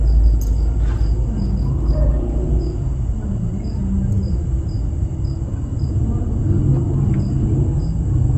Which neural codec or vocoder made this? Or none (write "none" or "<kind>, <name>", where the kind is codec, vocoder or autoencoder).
none